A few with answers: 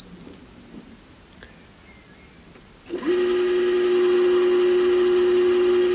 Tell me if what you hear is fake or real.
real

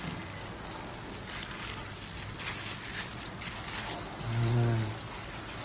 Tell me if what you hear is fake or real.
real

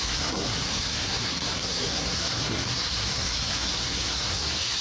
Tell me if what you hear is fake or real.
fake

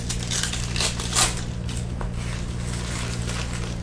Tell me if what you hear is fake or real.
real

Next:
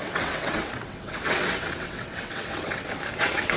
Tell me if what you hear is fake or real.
fake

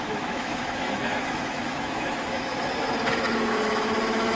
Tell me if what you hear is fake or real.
fake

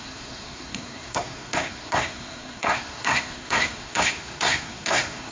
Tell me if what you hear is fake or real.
fake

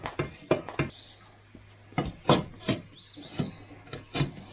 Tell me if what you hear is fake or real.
real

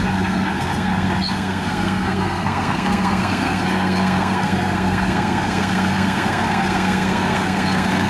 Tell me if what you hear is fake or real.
fake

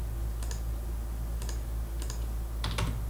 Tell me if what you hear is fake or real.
real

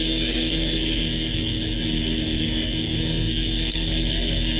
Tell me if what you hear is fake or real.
fake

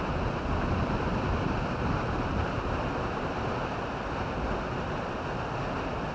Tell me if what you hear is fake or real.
real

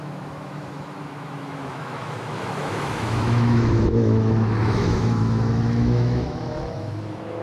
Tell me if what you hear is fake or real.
fake